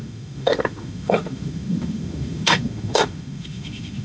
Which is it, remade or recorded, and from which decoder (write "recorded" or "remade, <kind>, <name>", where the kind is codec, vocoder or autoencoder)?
remade, autoencoder, DAC-VAE